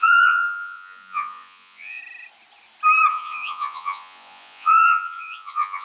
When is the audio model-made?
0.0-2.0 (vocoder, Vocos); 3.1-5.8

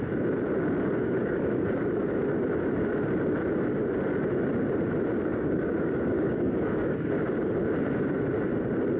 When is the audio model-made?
1.0-1.8 (codec, DAC); 5.3-7.1

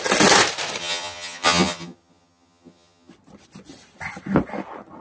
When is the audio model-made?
0.8-3.1 (vocoder, HiFi-GAN)

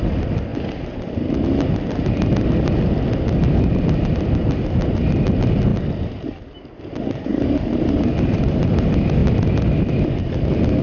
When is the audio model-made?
7.3-8.4 (vocoder, BigVGAN v2)

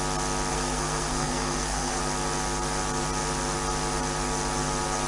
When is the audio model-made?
0.5-2.0 (codec, SNAC)

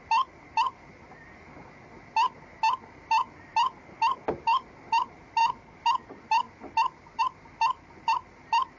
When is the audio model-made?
5.4-7.2 (vocoder, BigVGAN v2)

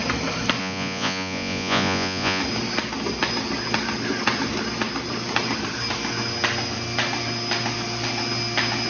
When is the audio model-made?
0.6-2.4 (vocoder, Vocos)

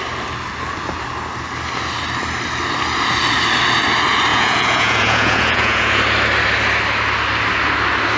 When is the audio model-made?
4.3-6.0 (vocoder, Vocos)